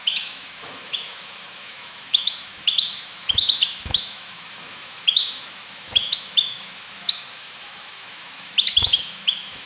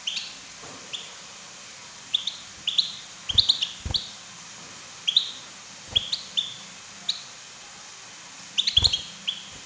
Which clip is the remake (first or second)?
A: first